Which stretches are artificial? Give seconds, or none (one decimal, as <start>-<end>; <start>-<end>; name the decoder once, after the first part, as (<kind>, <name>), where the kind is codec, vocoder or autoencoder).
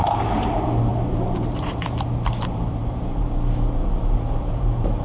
0.0-5.0 (vocoder, BigVGAN v2)